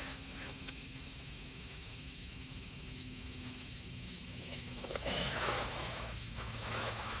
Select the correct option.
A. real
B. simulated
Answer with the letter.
B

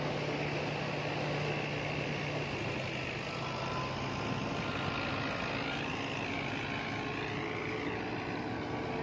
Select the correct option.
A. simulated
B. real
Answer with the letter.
B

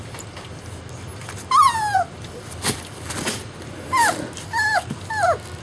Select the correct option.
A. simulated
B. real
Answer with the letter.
B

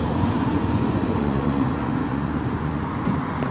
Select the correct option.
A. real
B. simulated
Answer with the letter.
B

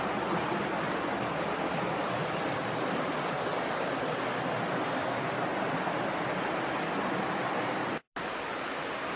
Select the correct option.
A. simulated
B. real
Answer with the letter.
B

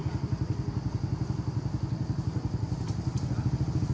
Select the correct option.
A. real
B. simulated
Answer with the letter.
A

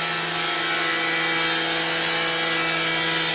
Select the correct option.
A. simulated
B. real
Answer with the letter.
B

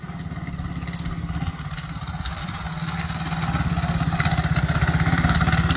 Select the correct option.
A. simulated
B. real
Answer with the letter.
B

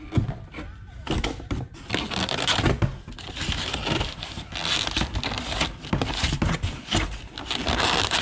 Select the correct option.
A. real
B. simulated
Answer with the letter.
A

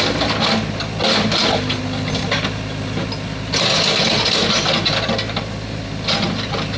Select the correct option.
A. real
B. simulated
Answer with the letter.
A